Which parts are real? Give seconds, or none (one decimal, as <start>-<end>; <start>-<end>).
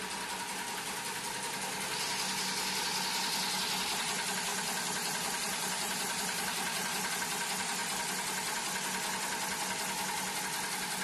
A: 0.0-4.5; 7.1-11.0